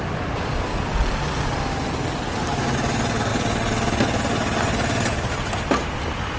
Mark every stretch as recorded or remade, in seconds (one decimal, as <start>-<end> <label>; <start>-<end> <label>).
0.0-6.4 recorded